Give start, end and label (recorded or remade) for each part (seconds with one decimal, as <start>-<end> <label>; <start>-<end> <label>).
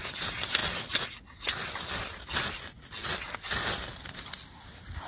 0.0-5.1 recorded